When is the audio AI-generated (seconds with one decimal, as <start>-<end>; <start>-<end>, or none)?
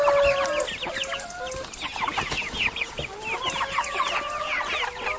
none